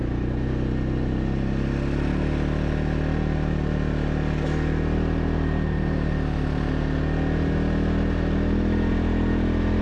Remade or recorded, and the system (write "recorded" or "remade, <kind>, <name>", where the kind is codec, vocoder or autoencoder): recorded